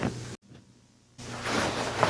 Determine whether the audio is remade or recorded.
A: recorded